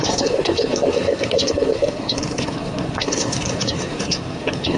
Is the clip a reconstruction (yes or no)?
yes